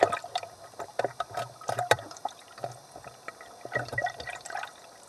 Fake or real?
fake